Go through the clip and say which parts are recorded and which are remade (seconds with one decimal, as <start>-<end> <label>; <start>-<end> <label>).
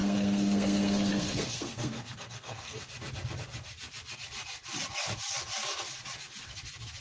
0.0-2.8 remade; 2.8-7.0 recorded